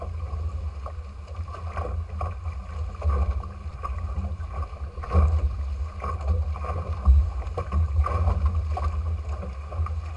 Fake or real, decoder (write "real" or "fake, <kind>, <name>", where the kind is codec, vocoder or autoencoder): real